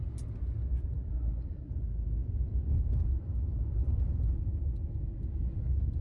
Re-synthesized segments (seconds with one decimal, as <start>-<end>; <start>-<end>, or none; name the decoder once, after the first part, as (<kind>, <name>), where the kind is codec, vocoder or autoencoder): 1.1-1.7 (codec, SNAC)